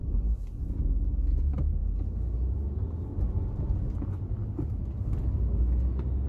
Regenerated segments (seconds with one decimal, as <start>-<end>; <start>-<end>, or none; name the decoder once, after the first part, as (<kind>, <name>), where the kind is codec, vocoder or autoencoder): none